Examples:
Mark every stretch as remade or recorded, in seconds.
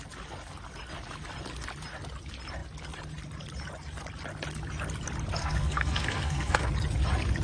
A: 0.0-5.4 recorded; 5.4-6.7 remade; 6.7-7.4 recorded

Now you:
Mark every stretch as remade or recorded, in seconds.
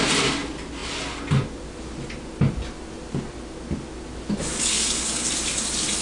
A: 0.0-4.7 recorded; 4.7-5.3 remade; 5.3-6.0 recorded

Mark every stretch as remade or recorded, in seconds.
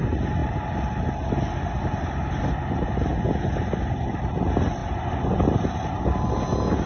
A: 0.0-6.9 recorded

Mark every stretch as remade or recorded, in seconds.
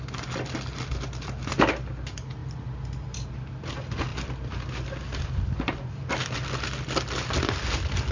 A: 0.0-4.1 recorded; 4.1-6.0 remade; 6.0-8.1 recorded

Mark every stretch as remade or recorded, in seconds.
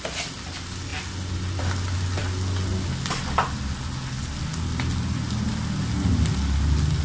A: 0.0-7.0 recorded